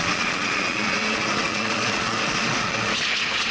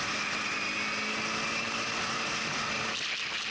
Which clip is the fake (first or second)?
first